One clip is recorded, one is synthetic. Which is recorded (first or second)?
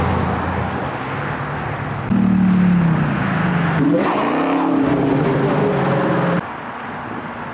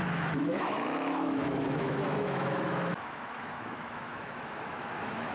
first